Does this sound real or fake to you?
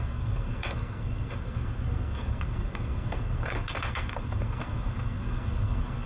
fake